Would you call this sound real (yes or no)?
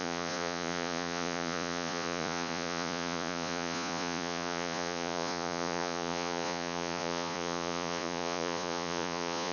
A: no